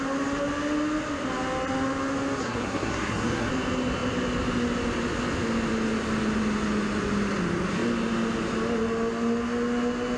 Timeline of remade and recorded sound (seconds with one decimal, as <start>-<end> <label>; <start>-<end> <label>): 0.0-2.4 recorded; 2.4-3.5 remade; 3.5-10.2 recorded